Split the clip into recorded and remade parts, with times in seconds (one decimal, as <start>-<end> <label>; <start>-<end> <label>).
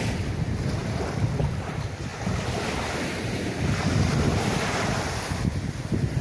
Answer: 0.0-6.2 recorded